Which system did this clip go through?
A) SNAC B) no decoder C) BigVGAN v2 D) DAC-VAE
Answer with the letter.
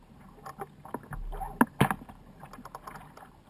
B